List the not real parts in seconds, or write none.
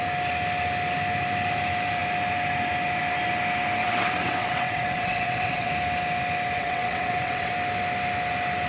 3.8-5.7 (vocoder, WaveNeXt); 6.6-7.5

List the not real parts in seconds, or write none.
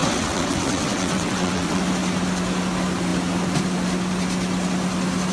0.0-1.8 (vocoder, WaveNeXt)